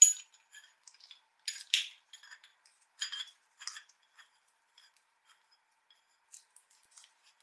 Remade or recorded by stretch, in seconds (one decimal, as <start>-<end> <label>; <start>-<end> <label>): 0.0-7.4 recorded